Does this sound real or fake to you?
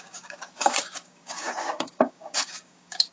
fake